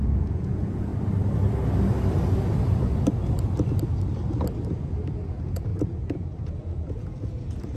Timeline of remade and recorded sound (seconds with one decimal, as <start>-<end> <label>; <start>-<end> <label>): 0.0-0.9 remade; 0.9-5.3 recorded; 5.3-7.8 remade